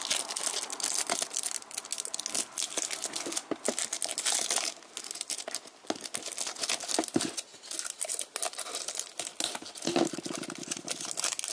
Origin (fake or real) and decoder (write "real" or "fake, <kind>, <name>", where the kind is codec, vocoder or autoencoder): real